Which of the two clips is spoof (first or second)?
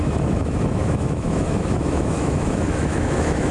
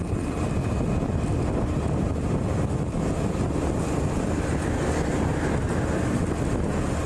first